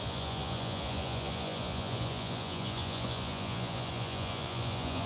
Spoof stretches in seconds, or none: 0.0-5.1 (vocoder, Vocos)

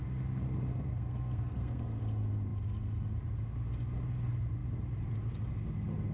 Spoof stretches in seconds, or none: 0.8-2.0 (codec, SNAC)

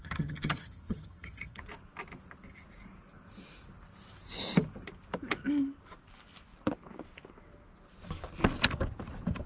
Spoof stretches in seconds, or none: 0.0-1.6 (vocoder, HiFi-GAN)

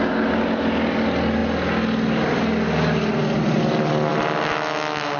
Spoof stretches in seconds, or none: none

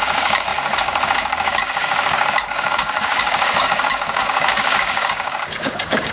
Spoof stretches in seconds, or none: 0.0-6.1 (codec, DAC)